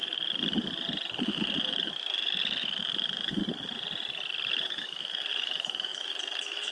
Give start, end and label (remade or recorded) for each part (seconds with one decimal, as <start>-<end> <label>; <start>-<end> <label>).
0.0-1.2 recorded; 1.2-3.4 remade; 3.4-4.5 recorded; 4.5-6.7 remade